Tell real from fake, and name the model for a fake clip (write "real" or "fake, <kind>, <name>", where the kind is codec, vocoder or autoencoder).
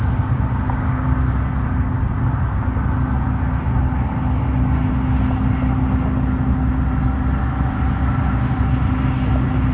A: real